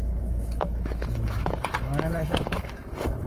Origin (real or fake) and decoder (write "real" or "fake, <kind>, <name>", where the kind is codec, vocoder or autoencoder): fake, autoencoder, DAC-VAE